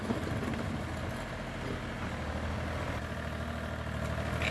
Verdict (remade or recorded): recorded